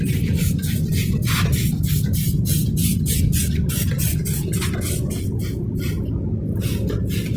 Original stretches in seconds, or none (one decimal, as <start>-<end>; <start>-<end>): 0.0-7.4